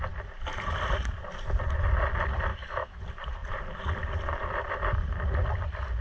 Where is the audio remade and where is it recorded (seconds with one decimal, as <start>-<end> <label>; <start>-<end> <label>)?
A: 0.0-2.5 recorded; 2.5-3.0 remade; 3.0-6.0 recorded